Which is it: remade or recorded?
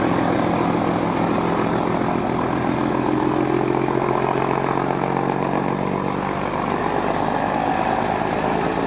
recorded